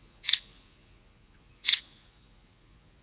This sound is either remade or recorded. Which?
remade